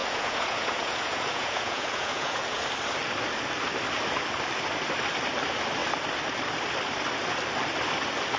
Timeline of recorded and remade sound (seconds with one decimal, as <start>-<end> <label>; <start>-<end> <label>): 0.0-2.6 remade; 2.6-8.4 recorded